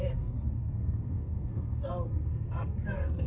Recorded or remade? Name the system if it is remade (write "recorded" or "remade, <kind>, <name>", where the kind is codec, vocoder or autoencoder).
remade, codec, SNAC